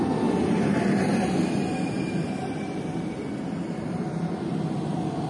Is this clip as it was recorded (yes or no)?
yes